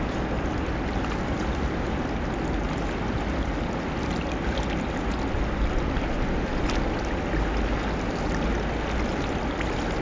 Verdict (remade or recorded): recorded